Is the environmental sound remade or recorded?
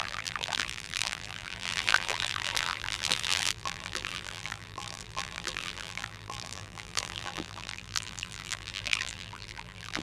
remade